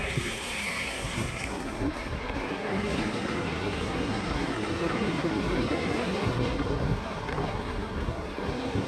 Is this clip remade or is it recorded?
remade